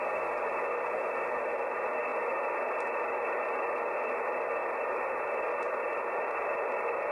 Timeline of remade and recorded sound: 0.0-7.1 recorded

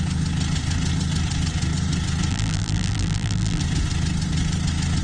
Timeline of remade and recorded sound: 0.0-2.3 recorded; 2.3-3.6 remade; 3.6-5.0 recorded

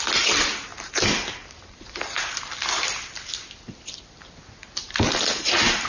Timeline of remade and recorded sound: 0.0-0.7 recorded; 0.7-2.5 remade; 2.5-5.9 recorded

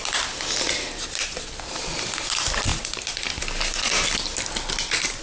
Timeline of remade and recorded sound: 0.0-2.7 recorded; 2.7-3.3 remade; 3.3-5.2 recorded